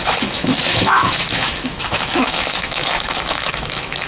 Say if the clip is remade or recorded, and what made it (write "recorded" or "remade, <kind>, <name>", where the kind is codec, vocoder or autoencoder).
remade, autoencoder, DAC-VAE